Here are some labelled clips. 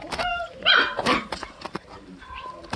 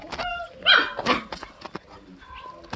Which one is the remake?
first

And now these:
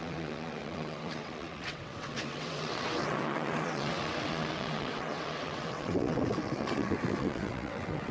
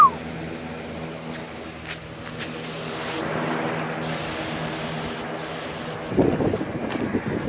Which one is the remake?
first